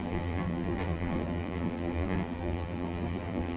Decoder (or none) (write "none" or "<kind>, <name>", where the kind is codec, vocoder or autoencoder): vocoder, BigVGAN v2